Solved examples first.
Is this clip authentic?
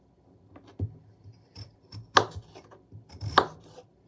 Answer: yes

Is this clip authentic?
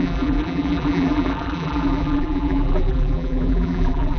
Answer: no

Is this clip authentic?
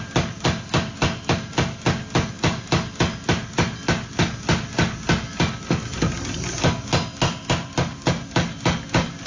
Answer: yes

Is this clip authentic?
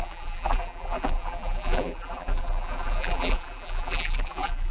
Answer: no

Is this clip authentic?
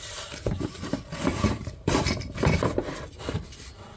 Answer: no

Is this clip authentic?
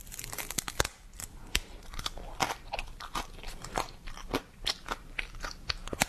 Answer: no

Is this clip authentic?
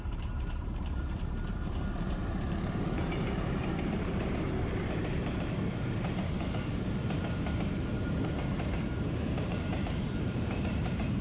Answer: no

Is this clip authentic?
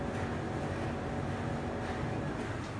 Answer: yes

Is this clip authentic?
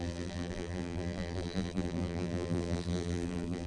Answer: no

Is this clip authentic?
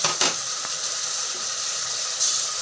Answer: no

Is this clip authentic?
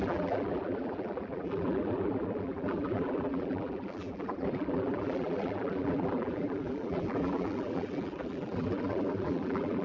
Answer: no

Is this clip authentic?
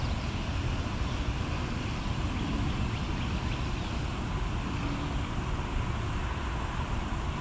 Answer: yes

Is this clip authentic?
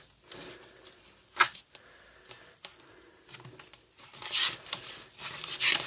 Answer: yes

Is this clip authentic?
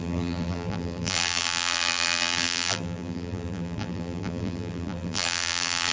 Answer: no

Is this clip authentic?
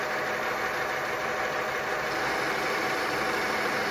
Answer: no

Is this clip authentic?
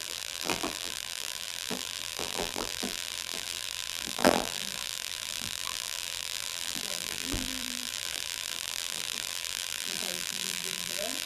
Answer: no